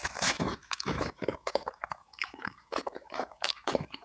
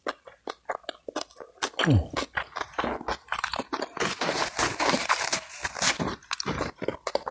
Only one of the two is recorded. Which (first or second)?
second